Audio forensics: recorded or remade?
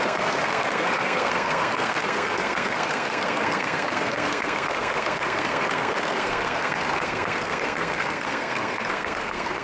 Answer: remade